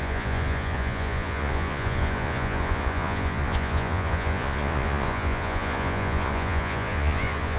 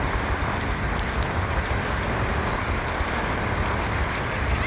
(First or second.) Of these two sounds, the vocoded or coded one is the first